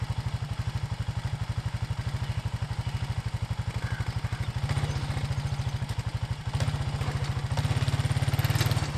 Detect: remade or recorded recorded